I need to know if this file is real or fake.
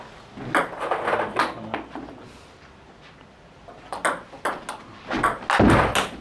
real